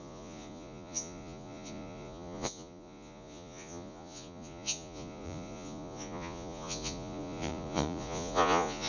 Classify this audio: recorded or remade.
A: remade